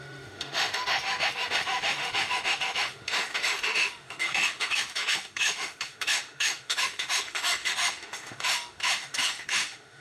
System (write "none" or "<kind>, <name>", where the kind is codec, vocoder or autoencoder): autoencoder, DAC-VAE